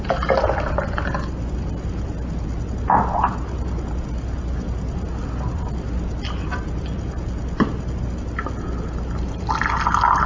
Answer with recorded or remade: recorded